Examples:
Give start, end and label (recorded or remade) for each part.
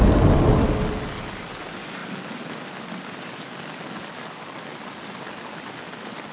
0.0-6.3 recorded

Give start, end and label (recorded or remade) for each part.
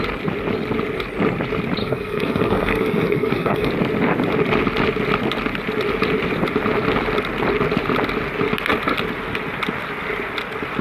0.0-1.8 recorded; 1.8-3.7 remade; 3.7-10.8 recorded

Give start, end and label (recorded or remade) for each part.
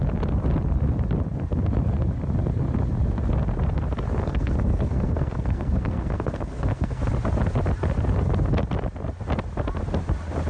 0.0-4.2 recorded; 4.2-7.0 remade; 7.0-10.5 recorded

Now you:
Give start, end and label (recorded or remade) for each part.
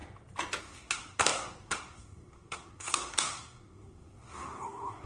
0.0-0.6 recorded; 0.6-5.1 remade